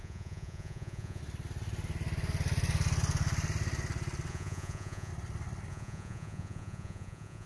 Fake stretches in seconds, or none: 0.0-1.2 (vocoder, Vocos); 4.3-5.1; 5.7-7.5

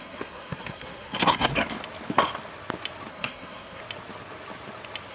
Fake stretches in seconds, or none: 0.0-1.5 (codec, SNAC); 3.1-3.8

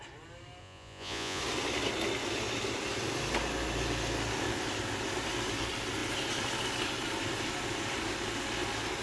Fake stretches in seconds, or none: 0.6-1.4 (vocoder, Vocos)

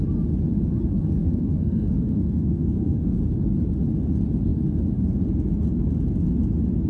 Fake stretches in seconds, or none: 0.9-3.2 (codec, SNAC)

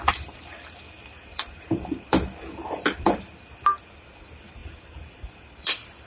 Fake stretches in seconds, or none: 0.0-6.1 (vocoder, BigVGAN v2)

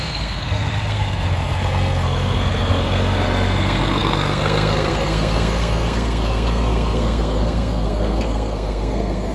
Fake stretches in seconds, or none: 0.0-9.3 (codec, SNAC)

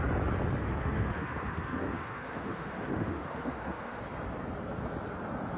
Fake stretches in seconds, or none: 0.6-4.0 (autoencoder, DAC-VAE)

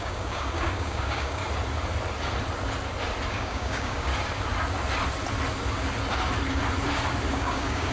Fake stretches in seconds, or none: 0.0-1.4 (codec, DAC); 3.3-4.1; 7.3-7.9